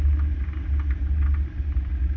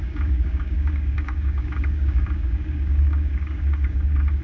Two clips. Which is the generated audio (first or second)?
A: second